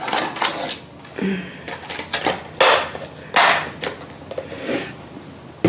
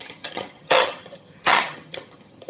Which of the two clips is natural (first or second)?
first